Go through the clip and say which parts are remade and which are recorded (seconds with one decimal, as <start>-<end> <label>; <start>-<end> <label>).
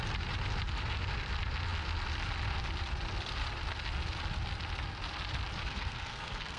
0.0-5.6 recorded; 5.6-6.6 remade